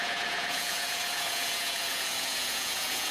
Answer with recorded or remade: remade